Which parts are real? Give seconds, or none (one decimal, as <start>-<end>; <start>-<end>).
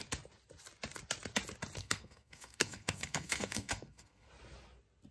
0.0-1.8; 4.3-5.1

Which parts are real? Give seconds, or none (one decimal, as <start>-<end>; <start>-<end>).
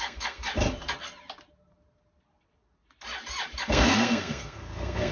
0.5-3.6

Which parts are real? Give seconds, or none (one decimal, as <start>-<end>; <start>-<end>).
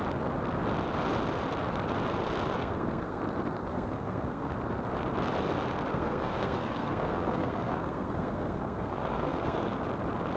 0.0-2.6; 3.2-3.7; 4.5-5.9; 9.8-10.4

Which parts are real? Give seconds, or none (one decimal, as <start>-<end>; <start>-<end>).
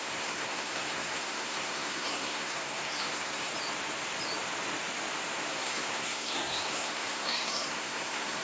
3.5-5.5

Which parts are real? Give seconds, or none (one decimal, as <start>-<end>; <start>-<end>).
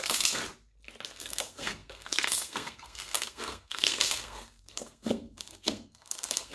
0.4-1.1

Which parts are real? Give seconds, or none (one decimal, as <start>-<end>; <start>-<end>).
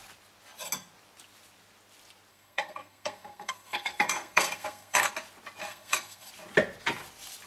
0.0-2.3; 5.1-5.6; 6.3-7.5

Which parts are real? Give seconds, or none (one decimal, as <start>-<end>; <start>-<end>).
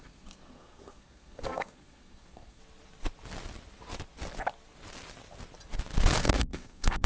2.6-6.2